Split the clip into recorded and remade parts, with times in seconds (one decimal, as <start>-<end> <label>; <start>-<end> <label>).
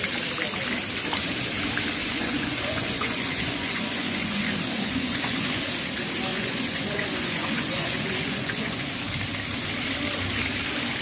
0.0-2.0 recorded; 2.0-5.6 remade; 5.6-6.3 recorded; 6.3-8.9 remade; 8.9-11.0 recorded